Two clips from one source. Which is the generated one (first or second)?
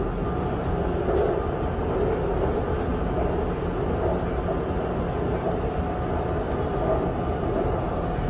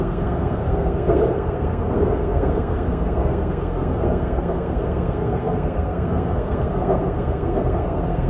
second